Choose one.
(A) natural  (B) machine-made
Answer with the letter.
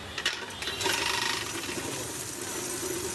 A